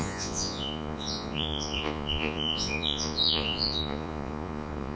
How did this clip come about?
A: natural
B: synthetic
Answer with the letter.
B